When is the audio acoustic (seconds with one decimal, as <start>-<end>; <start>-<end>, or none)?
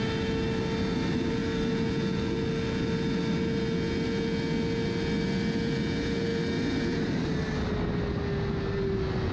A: 0.0-9.3